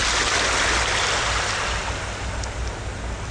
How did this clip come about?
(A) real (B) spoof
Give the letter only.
A